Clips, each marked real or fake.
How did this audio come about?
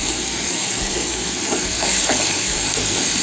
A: fake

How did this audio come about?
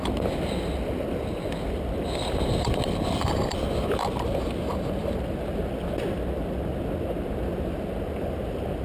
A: real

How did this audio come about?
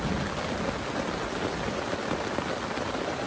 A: real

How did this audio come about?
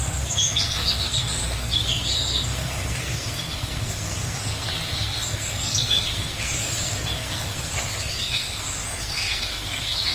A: fake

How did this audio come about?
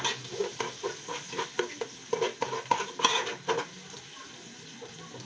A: real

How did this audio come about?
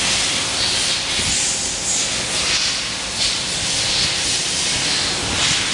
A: real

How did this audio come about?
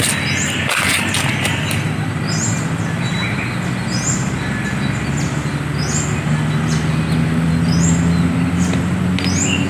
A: real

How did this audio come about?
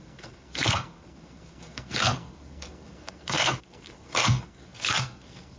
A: fake